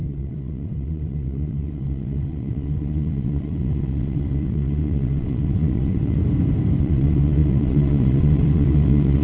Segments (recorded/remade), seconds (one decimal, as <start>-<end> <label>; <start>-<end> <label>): 0.0-6.2 remade; 6.2-6.8 recorded; 6.8-9.2 remade